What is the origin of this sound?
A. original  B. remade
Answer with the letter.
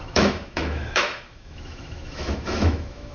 B